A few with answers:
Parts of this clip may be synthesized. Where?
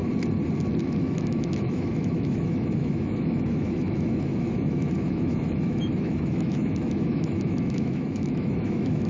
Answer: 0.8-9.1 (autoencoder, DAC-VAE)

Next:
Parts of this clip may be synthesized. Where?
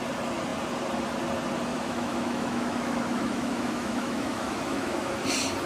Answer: 1.7-5.1 (autoencoder, DAC-VAE)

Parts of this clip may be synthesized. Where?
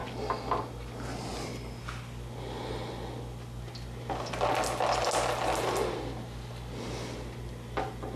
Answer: none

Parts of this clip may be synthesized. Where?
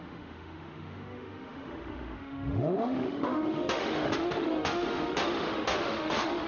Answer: 0.0-6.5 (autoencoder, DAC-VAE)